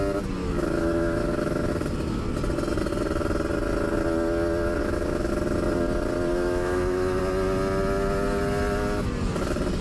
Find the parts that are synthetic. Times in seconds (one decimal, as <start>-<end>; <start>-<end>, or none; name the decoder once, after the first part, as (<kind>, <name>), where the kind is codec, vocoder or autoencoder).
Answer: 0.4-1.7 (autoencoder, DAC-VAE); 4.8-5.3; 6.3-7.2